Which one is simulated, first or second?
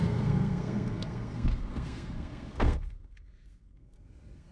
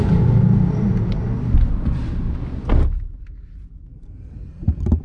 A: first